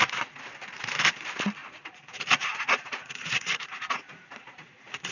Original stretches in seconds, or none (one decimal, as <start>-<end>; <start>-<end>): 0.0-1.6